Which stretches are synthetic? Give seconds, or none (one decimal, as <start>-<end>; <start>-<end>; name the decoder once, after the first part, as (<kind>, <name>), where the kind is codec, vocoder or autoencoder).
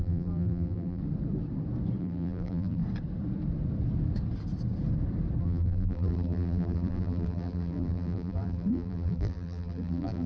0.0-1.0 (vocoder, BigVGAN v2); 2.0-2.8; 5.4-10.3